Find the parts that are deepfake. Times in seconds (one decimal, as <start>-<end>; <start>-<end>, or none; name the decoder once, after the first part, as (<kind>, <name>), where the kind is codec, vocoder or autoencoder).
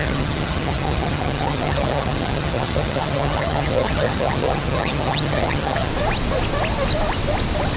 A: 0.0-5.9 (vocoder, HiFi-GAN)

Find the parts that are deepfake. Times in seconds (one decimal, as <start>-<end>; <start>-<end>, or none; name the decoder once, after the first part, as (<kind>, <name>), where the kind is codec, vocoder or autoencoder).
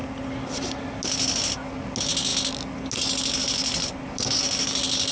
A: none